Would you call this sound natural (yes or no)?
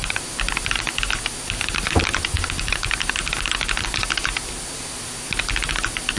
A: yes